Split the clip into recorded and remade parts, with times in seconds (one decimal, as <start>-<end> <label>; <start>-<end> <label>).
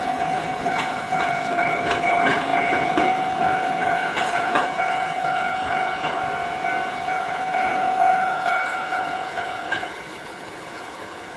0.0-6.2 remade; 6.2-6.9 recorded; 6.9-11.4 remade